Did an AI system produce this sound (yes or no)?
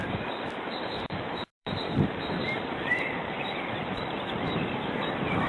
yes